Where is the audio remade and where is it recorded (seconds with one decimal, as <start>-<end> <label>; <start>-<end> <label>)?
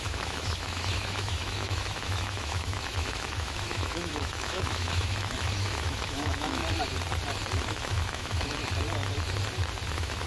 0.0-6.6 remade; 6.6-7.6 recorded; 7.6-8.6 remade; 8.6-9.9 recorded; 9.9-10.3 remade